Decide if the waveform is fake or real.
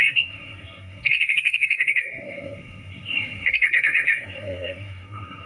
fake